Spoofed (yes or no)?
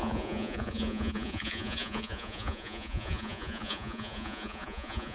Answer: yes